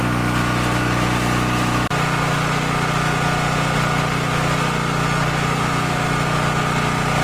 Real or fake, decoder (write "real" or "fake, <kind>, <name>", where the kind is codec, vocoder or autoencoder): real